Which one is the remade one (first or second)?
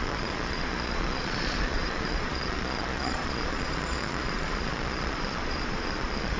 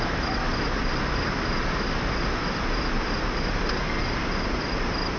first